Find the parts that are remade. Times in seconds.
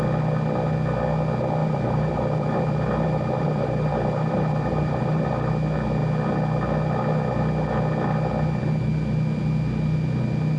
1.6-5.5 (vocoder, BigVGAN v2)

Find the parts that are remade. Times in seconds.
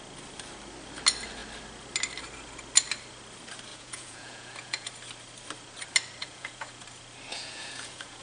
3.7-4.9 (vocoder, Vocos); 6.2-6.8; 7.3-8.2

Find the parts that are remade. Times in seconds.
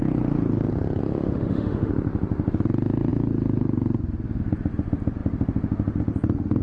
1.0-1.9 (autoencoder, DAC-VAE)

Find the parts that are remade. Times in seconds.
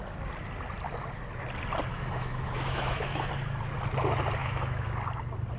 1.9-3.3 (autoencoder, DAC-VAE); 4.4-4.9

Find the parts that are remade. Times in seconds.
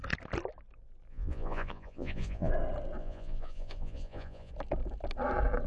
1.1-2.5 (vocoder, Vocos); 3.0-4.5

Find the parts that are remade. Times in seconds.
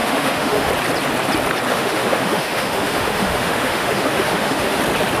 0.0-0.7 (autoencoder, DAC-VAE); 1.7-4.8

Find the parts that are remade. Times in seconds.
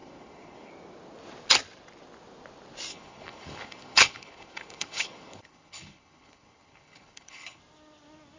0.0-0.7 (codec, HILCodec); 2.9-7.6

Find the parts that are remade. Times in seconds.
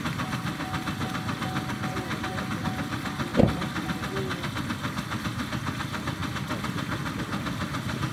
none